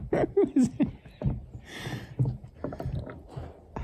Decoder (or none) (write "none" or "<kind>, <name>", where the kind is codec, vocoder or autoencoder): none